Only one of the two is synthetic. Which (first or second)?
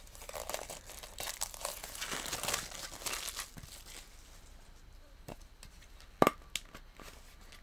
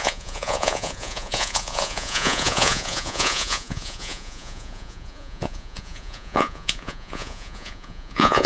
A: second